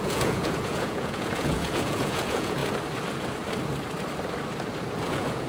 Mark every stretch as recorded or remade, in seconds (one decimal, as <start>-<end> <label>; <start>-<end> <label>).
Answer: 0.0-2.6 remade; 2.6-5.1 recorded; 5.1-5.5 remade